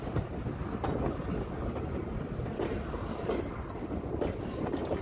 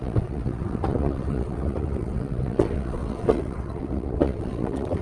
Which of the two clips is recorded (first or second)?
first